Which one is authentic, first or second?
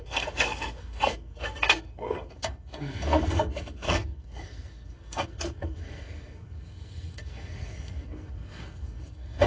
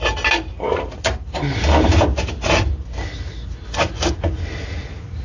second